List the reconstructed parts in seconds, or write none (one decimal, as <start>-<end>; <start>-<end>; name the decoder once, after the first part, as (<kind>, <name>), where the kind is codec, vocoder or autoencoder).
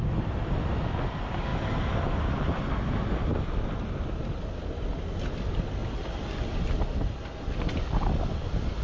none